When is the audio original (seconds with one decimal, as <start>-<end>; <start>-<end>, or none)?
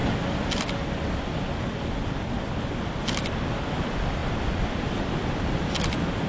0.0-6.3